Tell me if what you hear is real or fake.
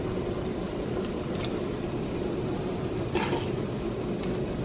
real